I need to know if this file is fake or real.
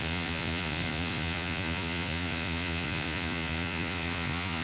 fake